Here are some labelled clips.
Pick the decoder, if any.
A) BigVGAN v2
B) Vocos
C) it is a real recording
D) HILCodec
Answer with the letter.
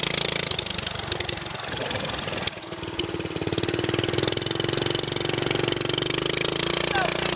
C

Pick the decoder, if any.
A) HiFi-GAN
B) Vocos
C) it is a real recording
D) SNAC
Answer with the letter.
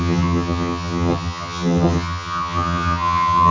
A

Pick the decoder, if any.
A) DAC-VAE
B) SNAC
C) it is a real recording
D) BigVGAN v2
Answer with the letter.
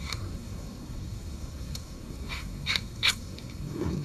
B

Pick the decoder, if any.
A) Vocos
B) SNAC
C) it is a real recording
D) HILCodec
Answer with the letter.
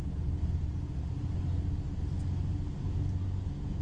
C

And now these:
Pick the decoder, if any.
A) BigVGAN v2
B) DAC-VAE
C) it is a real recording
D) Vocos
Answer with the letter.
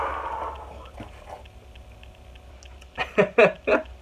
C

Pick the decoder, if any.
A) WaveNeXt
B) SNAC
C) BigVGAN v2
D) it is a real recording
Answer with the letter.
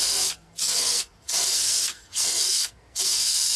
B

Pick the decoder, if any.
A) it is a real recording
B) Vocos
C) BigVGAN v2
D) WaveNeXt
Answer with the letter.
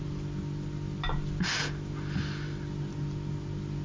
A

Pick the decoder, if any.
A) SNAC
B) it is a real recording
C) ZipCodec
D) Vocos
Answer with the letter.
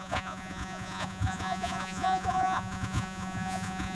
D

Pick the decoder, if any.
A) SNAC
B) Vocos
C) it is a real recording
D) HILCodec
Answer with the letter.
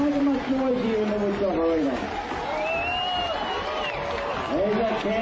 C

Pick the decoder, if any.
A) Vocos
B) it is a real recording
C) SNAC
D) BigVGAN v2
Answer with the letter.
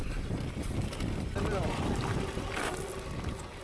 B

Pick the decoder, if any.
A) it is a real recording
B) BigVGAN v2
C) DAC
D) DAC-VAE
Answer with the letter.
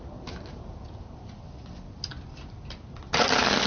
A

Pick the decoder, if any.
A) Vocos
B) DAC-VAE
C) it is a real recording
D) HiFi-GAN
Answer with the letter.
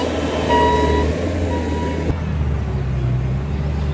C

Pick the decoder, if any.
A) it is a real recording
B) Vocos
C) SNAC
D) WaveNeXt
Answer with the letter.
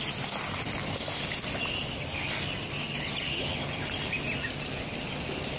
A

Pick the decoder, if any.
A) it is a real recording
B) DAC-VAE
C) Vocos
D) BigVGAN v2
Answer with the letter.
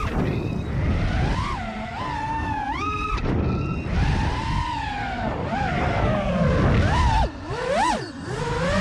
A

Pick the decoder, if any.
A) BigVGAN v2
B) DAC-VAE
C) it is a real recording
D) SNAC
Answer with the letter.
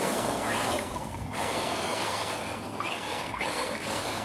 D